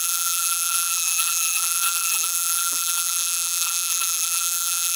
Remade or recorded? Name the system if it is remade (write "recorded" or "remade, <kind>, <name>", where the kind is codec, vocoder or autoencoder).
remade, vocoder, BigVGAN v2